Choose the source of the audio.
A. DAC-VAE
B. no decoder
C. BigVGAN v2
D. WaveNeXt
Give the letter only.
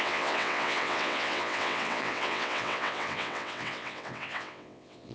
D